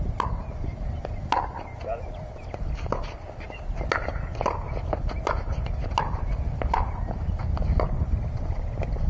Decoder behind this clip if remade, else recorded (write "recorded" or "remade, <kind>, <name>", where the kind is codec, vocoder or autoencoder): recorded